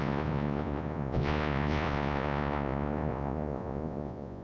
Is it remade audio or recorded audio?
remade